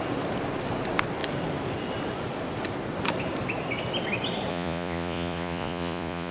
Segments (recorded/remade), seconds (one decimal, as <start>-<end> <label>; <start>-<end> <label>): 0.0-4.5 recorded; 4.5-6.3 remade